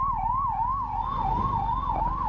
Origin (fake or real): real